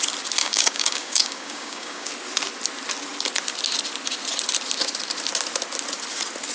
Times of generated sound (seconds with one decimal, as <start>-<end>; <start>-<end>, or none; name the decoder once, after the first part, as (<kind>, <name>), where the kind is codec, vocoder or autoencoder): 0.4-2.1 (codec, DAC)